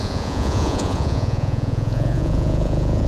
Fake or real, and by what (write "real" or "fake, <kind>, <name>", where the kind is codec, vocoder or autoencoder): fake, vocoder, Vocos